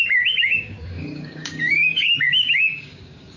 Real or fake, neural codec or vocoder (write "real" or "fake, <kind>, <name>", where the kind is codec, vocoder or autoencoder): fake, codec, DAC